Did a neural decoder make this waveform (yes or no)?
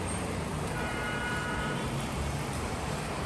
yes